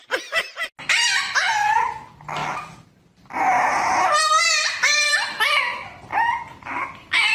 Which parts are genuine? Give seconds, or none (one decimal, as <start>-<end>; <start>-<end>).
0.0-7.3